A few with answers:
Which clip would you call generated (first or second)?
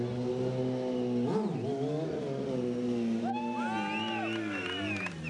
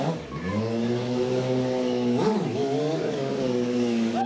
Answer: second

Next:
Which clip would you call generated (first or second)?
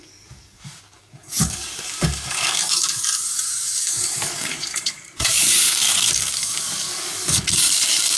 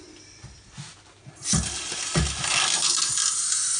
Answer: first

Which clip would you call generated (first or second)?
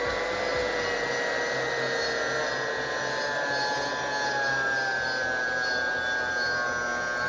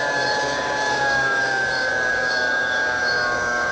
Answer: second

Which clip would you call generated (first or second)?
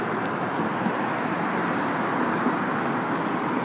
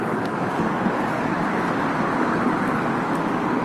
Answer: second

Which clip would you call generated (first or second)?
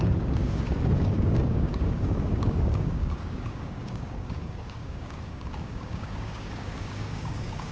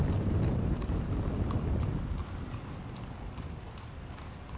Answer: first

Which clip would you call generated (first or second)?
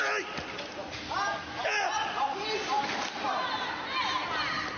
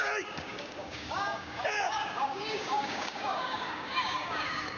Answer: second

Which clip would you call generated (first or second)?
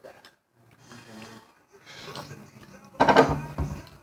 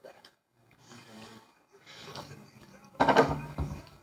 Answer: second